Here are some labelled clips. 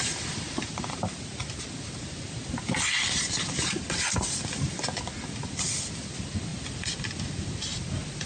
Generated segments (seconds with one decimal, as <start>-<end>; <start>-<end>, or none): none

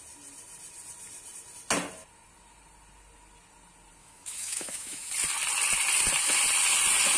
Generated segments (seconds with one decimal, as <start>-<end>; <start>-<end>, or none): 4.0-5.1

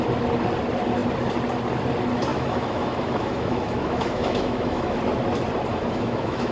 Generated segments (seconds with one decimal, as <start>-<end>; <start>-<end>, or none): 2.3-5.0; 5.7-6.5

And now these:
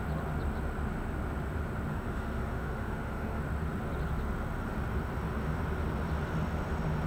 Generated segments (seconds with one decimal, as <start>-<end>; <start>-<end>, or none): 1.9-3.4